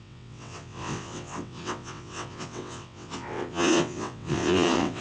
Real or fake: fake